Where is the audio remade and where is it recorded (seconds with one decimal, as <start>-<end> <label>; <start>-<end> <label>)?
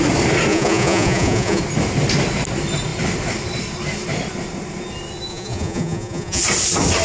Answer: 0.0-0.5 recorded; 0.5-1.6 remade; 1.6-5.3 recorded; 5.3-6.4 remade; 6.4-7.0 recorded